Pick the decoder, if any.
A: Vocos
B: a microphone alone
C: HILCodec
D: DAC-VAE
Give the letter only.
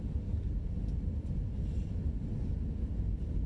B